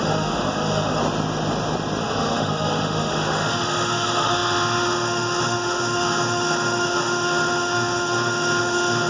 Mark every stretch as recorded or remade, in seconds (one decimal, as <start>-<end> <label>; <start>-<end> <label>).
0.0-1.0 remade; 1.0-2.0 recorded; 2.0-9.1 remade